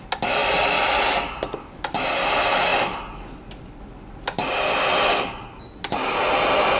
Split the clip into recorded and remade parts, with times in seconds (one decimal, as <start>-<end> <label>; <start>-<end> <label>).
0.0-6.8 recorded